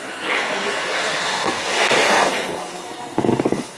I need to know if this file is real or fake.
fake